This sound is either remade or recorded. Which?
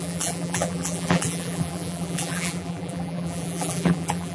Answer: remade